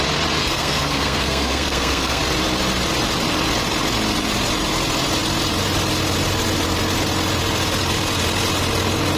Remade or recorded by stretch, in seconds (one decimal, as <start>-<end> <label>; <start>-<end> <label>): 0.0-0.4 recorded; 0.4-2.2 remade; 2.2-9.2 recorded